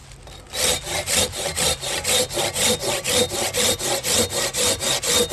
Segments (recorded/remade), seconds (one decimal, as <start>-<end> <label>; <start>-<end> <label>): 0.0-5.3 recorded

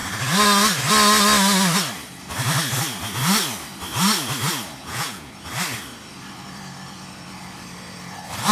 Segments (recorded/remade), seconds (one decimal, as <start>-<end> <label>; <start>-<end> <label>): 0.0-4.8 recorded; 4.8-5.3 remade; 5.3-8.5 recorded

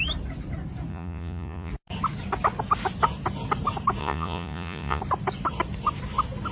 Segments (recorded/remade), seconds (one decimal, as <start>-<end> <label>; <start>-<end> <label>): 0.0-0.9 recorded; 0.9-1.7 remade; 1.7-4.0 recorded; 4.0-5.0 remade; 5.0-6.5 recorded

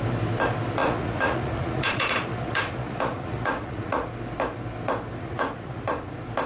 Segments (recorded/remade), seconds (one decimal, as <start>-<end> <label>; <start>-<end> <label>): 0.0-0.8 recorded; 0.8-4.1 remade; 4.1-5.2 recorded; 5.2-6.1 remade; 6.1-6.5 recorded

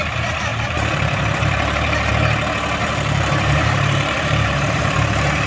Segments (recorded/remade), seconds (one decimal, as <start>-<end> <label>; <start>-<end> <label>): 0.0-0.5 recorded; 0.5-2.1 remade; 2.1-2.8 recorded; 2.8-5.5 remade

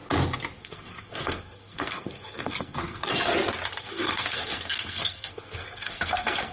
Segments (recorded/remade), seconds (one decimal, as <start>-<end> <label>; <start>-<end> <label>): 0.0-0.6 recorded; 0.6-3.1 remade; 3.1-3.8 recorded; 3.8-6.5 remade

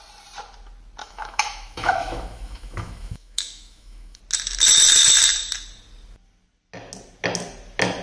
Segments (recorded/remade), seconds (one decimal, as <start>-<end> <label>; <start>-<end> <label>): 0.0-1.0 recorded; 1.0-4.2 remade; 4.2-8.0 recorded